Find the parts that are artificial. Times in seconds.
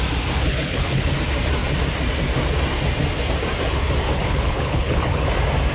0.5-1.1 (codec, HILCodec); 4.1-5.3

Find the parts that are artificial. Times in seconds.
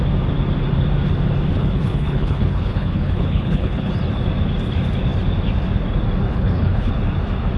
1.5-3.9 (codec, HILCodec); 6.3-6.9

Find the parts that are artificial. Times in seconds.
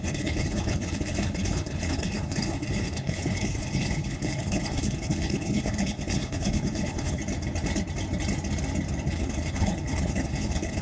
0.0-7.2 (codec, HILCodec); 9.1-10.8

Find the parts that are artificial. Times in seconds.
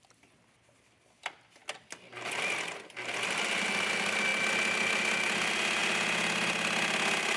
none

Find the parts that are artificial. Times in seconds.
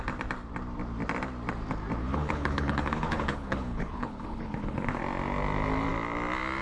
2.0-5.0 (codec, HILCodec)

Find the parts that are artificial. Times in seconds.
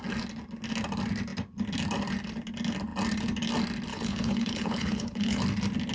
3.9-5.4 (codec, HILCodec)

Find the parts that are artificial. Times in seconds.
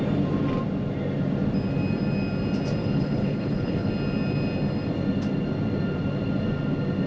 2.8-3.9 (codec, HILCodec)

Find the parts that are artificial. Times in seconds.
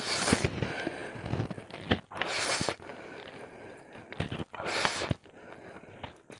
none